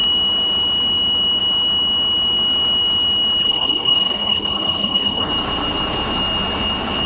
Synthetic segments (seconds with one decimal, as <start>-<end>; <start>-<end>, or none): 3.4-5.3